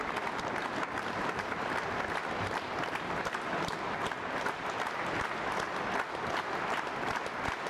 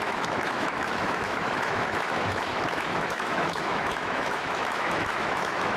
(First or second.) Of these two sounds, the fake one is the second